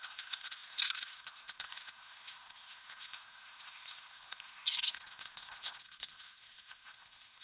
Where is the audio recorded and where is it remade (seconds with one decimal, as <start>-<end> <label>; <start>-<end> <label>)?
0.0-7.4 remade